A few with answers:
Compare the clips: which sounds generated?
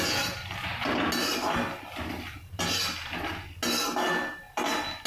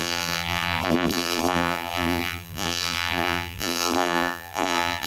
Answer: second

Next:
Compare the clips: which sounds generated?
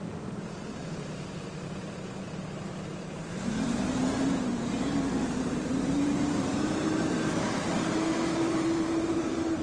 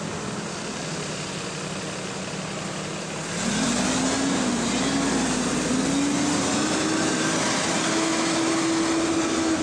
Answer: first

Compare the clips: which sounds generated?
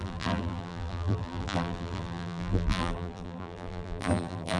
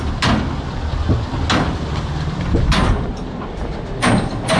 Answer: first